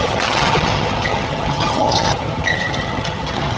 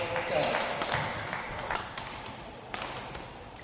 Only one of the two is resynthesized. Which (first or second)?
first